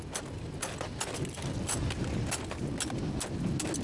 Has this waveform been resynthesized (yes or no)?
no